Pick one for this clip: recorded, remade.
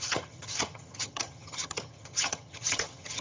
remade